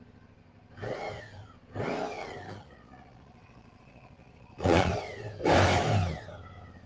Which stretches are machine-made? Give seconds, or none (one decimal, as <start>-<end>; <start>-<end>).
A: 2.2-4.9